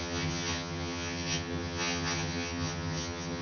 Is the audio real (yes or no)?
no